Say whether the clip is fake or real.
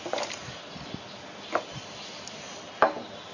real